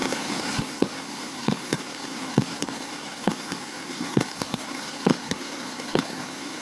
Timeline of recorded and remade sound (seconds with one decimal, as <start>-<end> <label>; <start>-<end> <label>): 0.0-6.6 remade